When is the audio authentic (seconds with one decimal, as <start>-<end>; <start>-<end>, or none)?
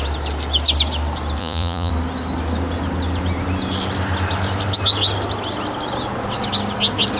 0.0-1.4; 1.9-7.2